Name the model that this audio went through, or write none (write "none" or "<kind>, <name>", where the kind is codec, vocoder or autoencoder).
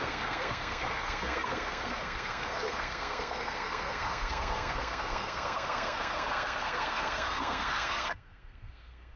codec, SNAC